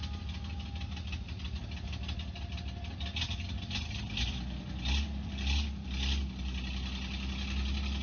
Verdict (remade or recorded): recorded